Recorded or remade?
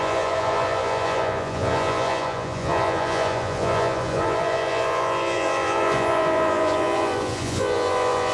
remade